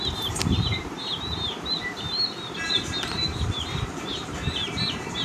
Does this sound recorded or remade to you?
remade